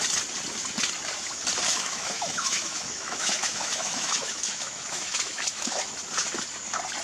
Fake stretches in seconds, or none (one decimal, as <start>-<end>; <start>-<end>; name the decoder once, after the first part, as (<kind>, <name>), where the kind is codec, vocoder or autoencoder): 1.7-5.9 (autoencoder, DAC-VAE)